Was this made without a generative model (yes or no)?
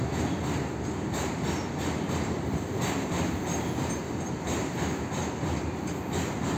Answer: yes